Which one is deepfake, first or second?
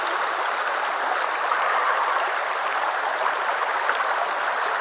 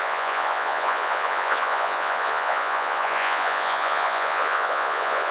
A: second